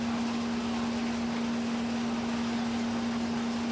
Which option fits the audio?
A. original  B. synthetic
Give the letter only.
A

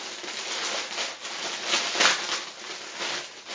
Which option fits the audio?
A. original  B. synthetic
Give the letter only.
A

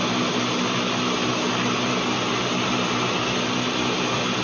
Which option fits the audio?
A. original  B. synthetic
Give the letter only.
A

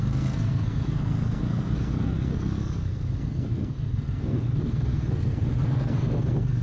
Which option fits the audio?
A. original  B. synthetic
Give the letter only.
B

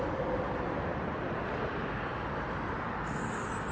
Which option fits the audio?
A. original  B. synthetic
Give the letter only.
B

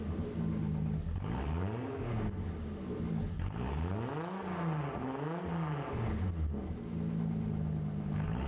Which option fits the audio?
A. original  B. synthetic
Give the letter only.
A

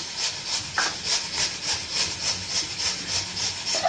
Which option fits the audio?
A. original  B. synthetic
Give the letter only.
A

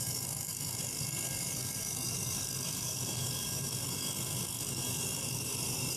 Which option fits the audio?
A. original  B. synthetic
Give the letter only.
B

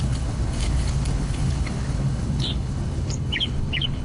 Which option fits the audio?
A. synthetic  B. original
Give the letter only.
A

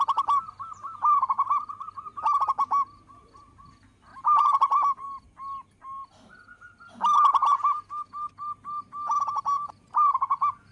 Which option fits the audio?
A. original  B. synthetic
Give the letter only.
A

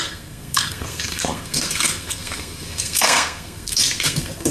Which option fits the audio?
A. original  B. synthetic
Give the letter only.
B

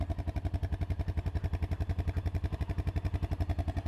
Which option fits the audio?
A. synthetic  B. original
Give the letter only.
A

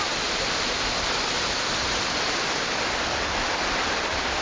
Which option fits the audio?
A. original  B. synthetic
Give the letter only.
A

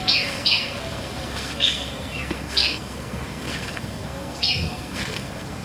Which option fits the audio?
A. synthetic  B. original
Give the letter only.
A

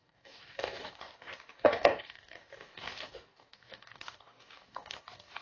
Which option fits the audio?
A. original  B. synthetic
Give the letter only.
B